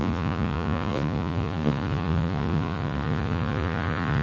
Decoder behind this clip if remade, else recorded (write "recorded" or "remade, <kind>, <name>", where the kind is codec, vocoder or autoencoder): remade, vocoder, Vocos